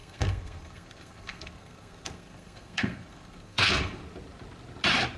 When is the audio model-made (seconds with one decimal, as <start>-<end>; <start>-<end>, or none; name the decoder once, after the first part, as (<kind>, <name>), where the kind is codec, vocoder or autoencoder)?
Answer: 0.0-4.0 (codec, SNAC)